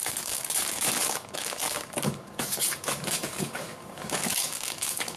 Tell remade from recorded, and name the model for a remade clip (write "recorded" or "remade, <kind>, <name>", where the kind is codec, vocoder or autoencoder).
remade, codec, DAC